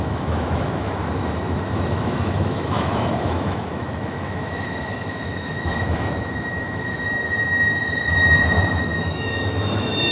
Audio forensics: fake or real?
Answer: fake